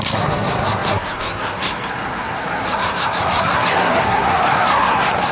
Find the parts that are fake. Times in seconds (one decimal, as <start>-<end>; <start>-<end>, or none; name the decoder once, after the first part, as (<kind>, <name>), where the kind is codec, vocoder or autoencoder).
0.0-5.3 (codec, SNAC)